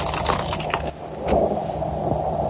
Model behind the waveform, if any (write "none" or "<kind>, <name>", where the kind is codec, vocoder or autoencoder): none